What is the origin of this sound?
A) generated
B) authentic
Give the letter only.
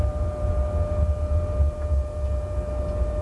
B